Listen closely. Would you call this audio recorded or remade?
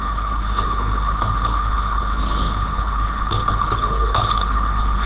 remade